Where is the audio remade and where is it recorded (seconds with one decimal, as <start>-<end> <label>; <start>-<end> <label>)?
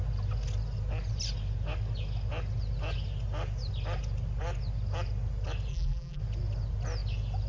0.0-5.7 recorded; 5.7-6.2 remade; 6.2-7.5 recorded